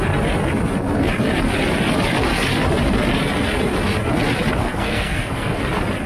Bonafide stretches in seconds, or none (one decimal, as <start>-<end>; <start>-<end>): 0.0-4.6; 5.6-6.1